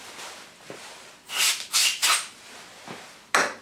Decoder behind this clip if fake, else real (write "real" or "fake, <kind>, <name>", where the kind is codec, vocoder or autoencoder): real